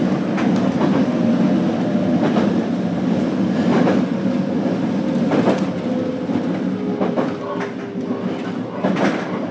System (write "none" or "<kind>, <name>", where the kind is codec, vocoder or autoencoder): none